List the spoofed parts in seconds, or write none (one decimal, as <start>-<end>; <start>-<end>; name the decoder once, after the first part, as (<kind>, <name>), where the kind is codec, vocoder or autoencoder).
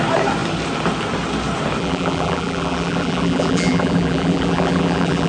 1.8-5.3 (vocoder, BigVGAN v2)